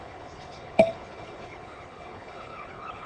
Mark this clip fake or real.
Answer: fake